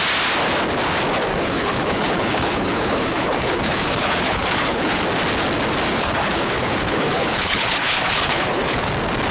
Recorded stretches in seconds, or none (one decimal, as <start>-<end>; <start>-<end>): 0.0-1.3; 5.0-5.9; 8.9-9.3